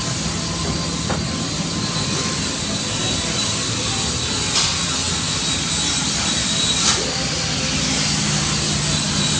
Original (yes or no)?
yes